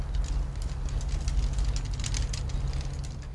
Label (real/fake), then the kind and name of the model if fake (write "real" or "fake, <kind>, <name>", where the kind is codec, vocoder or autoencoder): real